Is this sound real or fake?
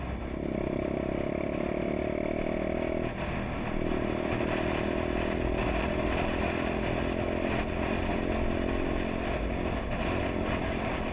real